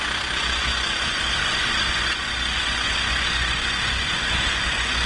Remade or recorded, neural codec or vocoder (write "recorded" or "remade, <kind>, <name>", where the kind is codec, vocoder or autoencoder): remade, vocoder, Vocos